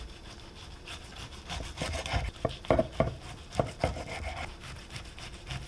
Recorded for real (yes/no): yes